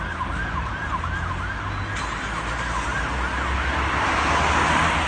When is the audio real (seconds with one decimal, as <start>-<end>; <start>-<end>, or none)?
0.0-5.1